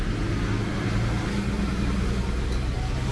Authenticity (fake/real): real